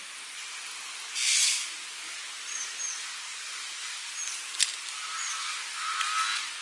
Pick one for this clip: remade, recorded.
recorded